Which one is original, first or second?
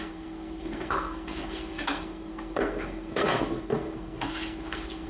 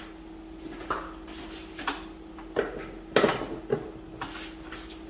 second